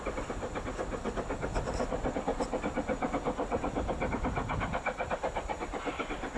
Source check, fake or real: real